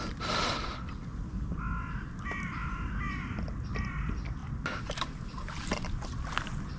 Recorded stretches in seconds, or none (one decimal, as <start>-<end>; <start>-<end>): 0.0-4.4; 5.7-6.8